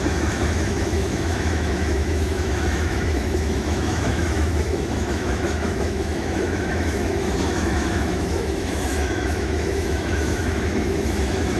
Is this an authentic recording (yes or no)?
no